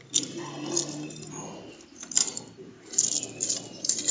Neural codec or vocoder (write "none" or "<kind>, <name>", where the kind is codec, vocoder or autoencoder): none